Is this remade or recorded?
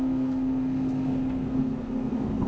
remade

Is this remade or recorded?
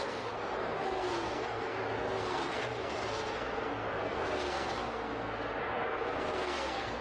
remade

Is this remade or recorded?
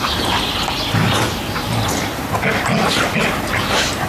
recorded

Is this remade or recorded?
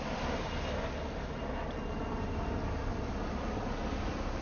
recorded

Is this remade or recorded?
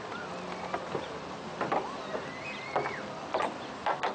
recorded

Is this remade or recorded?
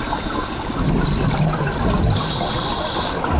recorded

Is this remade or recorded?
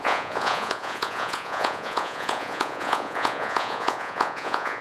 remade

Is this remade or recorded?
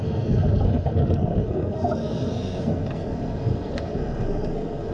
remade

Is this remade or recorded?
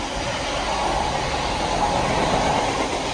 recorded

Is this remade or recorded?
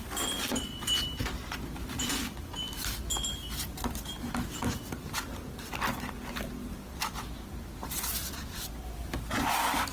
recorded